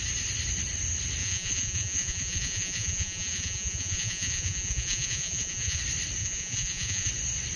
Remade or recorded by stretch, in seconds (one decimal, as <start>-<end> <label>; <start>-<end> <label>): 0.0-1.2 recorded; 1.2-5.8 remade; 5.8-6.2 recorded; 6.2-7.1 remade; 7.1-7.6 recorded